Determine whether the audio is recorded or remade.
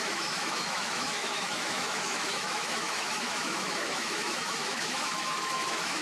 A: remade